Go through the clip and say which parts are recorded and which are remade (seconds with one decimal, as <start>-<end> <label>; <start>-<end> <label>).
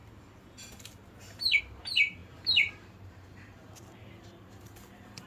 0.0-1.6 recorded; 1.6-5.3 remade